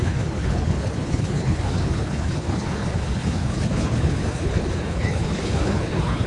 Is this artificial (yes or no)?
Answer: yes